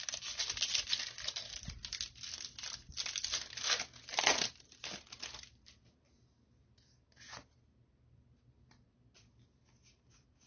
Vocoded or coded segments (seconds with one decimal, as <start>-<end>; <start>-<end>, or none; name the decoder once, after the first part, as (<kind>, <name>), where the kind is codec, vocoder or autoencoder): none